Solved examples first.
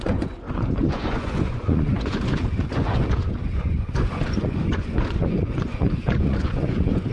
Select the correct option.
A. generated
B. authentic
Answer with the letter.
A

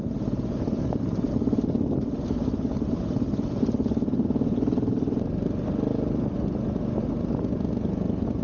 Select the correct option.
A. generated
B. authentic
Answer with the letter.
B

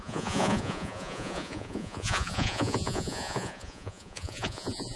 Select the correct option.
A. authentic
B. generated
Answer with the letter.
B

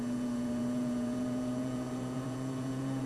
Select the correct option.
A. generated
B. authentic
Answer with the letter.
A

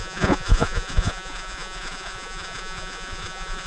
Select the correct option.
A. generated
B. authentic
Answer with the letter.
A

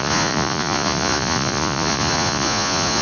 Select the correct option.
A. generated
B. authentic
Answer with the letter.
A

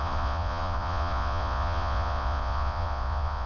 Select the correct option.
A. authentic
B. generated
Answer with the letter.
B